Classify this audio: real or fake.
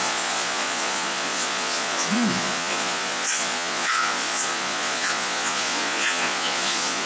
fake